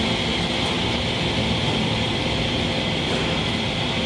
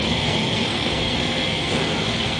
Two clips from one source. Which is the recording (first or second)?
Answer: first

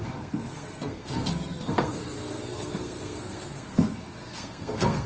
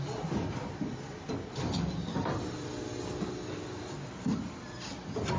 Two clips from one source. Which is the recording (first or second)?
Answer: second